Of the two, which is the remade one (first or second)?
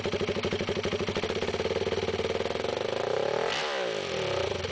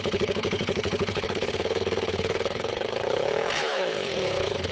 second